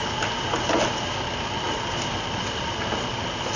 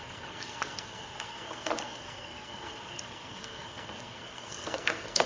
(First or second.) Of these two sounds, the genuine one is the first